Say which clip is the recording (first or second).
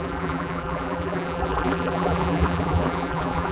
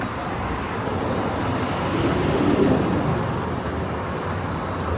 second